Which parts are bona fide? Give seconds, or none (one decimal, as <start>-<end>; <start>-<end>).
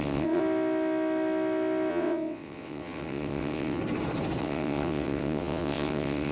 0.4-1.9; 3.8-4.4